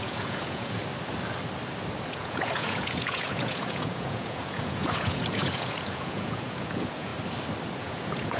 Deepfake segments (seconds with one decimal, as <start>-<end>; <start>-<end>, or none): 0.0-0.8; 2.1-7.1; 7.8-8.4